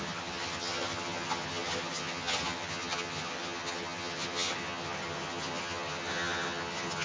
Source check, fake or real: fake